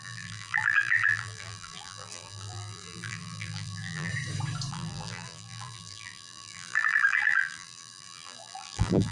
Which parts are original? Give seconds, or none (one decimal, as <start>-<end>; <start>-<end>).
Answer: 4.1-4.7

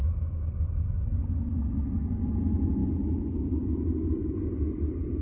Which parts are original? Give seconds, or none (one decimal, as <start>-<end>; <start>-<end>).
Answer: 0.0-5.2

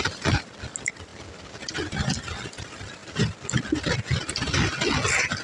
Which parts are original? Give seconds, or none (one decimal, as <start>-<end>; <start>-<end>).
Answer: 0.0-3.0; 4.9-5.4

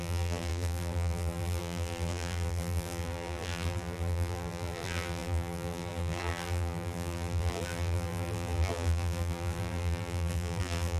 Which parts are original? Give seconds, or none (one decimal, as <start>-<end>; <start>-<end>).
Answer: none

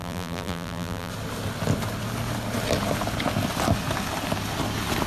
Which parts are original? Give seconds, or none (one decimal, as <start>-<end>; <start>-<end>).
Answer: 1.1-5.1

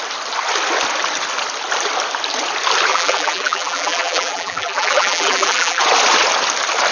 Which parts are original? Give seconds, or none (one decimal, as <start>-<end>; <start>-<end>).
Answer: 0.0-2.9; 5.8-6.9

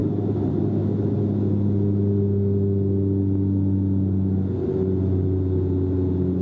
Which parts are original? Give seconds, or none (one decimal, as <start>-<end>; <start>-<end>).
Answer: 0.6-6.4

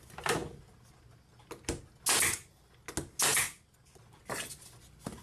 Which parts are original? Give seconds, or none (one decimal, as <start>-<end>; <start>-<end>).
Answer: 0.0-5.2